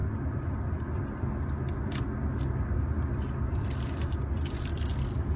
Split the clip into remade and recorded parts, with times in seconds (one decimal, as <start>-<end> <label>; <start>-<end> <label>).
0.0-5.4 recorded